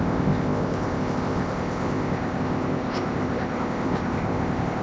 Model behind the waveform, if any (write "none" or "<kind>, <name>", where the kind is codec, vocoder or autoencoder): codec, ZipCodec